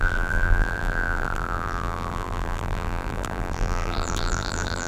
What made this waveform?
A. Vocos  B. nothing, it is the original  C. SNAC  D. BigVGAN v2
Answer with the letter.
D